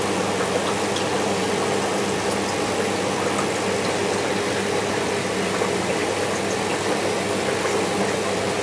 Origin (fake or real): real